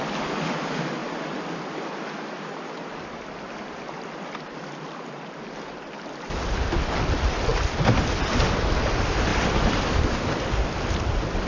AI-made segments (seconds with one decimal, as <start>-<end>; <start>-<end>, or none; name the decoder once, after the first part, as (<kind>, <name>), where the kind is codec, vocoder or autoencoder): none